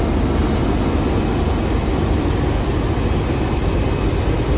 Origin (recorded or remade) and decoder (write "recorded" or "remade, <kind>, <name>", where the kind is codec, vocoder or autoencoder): recorded